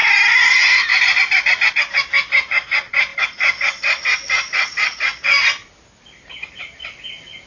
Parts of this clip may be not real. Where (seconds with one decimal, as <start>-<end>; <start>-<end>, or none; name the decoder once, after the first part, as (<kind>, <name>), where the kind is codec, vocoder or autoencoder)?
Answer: none